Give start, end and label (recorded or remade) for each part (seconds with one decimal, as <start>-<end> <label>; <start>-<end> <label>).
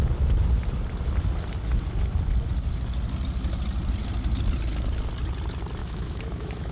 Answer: 0.0-5.8 recorded; 5.8-6.7 remade